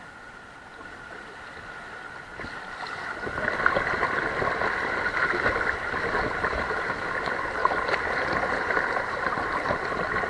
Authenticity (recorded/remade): recorded